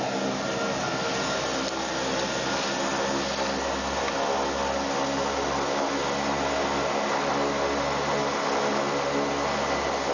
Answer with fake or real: real